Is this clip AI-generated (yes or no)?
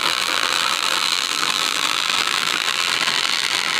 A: yes